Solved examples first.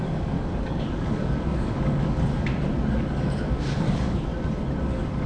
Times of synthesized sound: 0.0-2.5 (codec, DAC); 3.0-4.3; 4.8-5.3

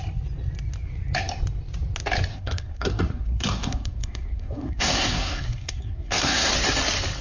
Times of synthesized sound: 2.3-6.5 (codec, SNAC)

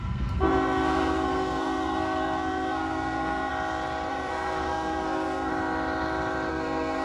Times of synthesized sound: 0.0-3.5 (codec, SNAC); 4.1-5.5; 6.5-7.0

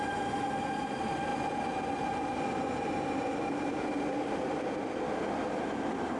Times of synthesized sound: none

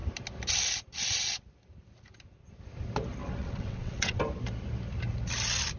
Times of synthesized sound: 3.4-4.2 (vocoder, WaveNeXt)